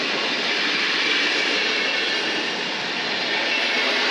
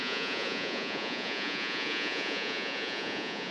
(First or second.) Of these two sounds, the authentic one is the first